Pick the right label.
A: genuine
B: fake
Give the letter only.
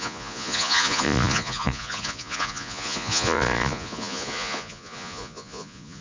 B